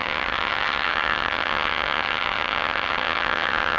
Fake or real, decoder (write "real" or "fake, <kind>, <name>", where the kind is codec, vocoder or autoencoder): fake, vocoder, HiFi-GAN